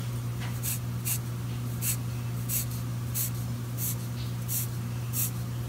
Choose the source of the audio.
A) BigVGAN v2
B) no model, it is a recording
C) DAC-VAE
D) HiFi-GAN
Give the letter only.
B